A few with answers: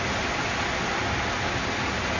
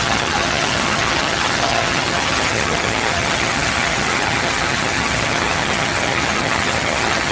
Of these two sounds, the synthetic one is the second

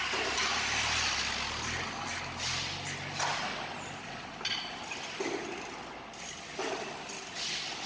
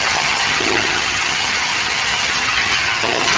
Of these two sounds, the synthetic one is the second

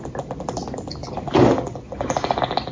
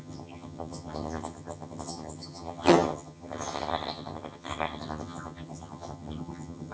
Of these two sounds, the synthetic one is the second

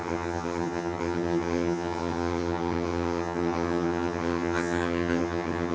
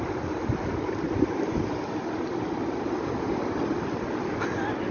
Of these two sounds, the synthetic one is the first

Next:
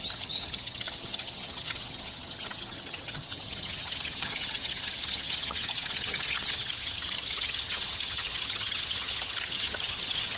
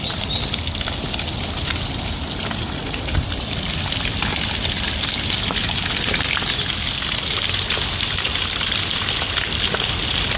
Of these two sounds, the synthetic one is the first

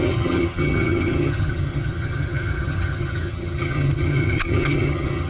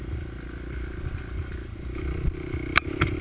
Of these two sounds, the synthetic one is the first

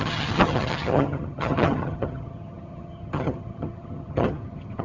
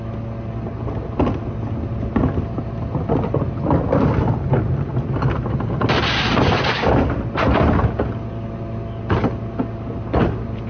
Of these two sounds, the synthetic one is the first